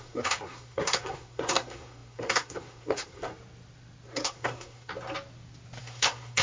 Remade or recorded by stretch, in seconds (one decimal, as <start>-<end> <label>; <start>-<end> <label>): 0.0-3.3 remade; 3.3-4.1 recorded; 4.1-4.9 remade; 4.9-5.8 recorded; 5.8-6.4 remade